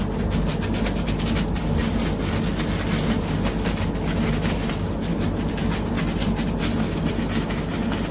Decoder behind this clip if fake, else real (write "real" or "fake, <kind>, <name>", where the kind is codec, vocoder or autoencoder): real